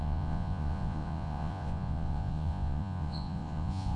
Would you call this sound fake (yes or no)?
yes